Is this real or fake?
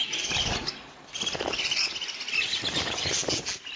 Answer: real